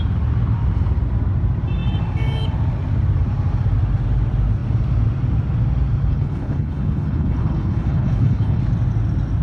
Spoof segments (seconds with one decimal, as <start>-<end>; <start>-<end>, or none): 6.1-8.6